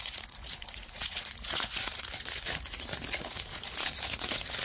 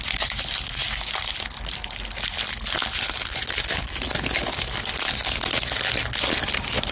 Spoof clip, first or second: first